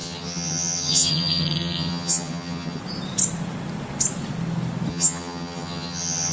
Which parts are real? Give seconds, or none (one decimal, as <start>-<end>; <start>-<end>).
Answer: 2.8-4.9